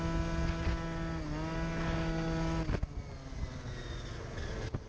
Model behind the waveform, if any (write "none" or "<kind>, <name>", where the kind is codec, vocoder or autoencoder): none